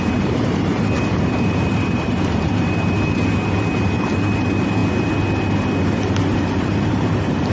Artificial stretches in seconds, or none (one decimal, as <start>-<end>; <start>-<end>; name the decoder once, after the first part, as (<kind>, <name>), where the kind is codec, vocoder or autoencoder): 0.0-4.8 (vocoder, BigVGAN v2); 5.8-7.5